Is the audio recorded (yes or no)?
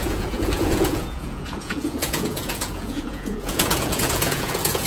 no